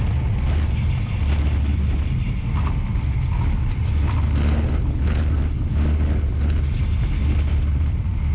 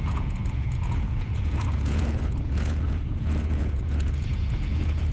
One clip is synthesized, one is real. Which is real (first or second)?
first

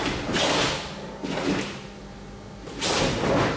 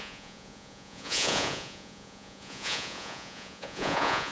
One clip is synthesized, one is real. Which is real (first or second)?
first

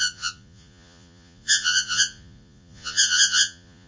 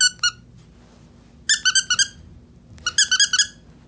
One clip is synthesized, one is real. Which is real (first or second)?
second